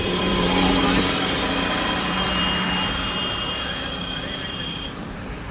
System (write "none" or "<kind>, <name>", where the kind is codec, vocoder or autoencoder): vocoder, BigVGAN v2